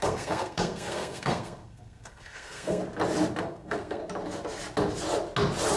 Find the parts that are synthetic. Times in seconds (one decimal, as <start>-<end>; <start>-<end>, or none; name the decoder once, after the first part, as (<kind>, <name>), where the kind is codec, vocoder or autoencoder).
0.0-2.8 (codec, SNAC); 3.4-4.0